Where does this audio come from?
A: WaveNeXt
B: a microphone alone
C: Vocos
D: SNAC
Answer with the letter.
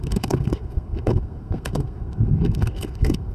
D